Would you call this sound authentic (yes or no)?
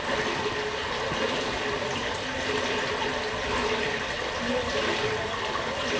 yes